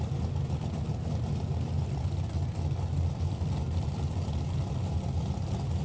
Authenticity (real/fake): real